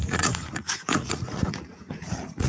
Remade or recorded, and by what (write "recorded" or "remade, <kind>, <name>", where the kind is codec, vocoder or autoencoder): remade, vocoder, Vocos